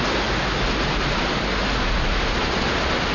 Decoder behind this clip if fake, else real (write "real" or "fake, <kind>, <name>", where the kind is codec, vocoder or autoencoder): real